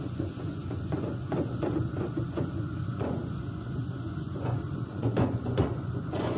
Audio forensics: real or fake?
fake